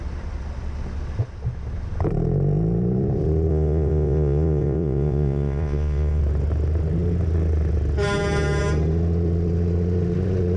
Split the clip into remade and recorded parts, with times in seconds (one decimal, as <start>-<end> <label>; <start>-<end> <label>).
0.0-3.5 recorded; 3.5-6.2 remade; 6.2-10.6 recorded